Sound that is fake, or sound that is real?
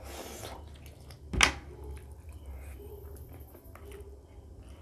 real